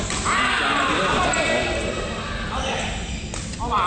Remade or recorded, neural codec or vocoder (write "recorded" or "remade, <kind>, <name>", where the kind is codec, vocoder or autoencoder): recorded